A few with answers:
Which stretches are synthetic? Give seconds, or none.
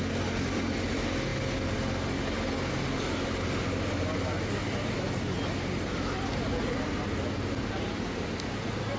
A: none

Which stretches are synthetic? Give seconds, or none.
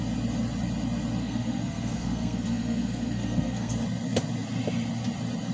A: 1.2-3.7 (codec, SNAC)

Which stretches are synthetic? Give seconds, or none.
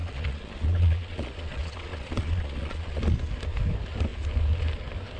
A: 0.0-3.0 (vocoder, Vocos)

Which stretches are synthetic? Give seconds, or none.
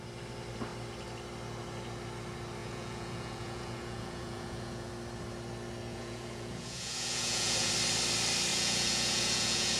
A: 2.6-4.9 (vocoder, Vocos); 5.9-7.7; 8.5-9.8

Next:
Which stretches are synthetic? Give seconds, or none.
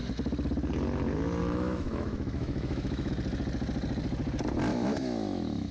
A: 1.4-3.1 (autoencoder, DAC-VAE); 4.7-5.7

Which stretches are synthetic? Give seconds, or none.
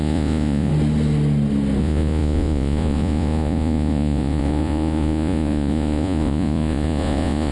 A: 0.0-0.7 (vocoder, Vocos); 1.8-7.5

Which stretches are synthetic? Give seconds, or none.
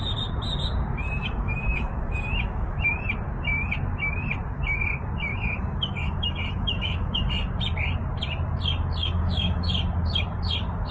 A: 1.2-2.9 (autoencoder, DAC-VAE); 5.3-7.3; 9.0-9.7